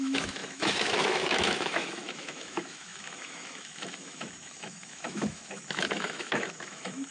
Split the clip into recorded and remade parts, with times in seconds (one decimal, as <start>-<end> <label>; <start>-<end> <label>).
0.0-7.1 remade